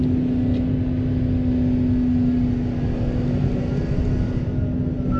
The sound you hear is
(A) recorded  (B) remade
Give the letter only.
A